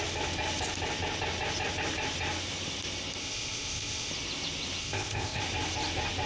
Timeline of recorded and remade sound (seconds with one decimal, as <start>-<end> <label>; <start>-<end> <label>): 0.0-3.2 recorded; 3.2-4.1 remade; 4.1-4.8 recorded; 4.8-5.4 remade; 5.4-6.3 recorded